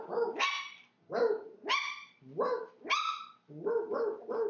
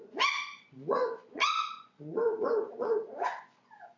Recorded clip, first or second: first